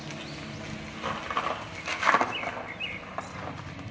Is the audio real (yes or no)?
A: yes